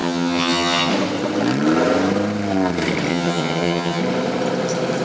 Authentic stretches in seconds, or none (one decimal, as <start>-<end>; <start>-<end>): 0.9-3.1; 4.0-5.0